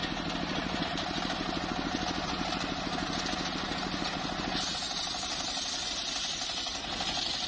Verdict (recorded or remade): recorded